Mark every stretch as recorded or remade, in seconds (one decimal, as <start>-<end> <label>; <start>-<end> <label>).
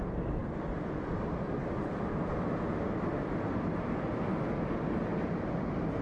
0.0-6.0 recorded